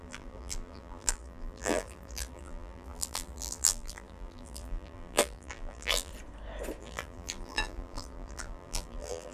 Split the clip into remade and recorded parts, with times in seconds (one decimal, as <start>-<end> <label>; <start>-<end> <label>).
0.0-6.1 remade; 6.1-6.8 recorded; 6.8-9.3 remade